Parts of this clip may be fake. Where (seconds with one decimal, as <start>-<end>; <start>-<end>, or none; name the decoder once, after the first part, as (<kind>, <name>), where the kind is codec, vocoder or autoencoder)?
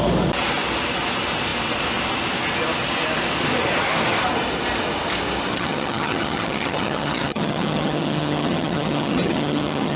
5.5-10.0 (vocoder, HiFi-GAN)